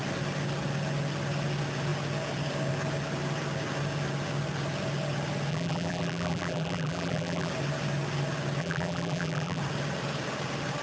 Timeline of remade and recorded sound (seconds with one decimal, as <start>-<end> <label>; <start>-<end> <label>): 0.0-5.5 recorded; 5.5-7.5 remade; 7.5-8.6 recorded; 8.6-9.6 remade; 9.6-10.8 recorded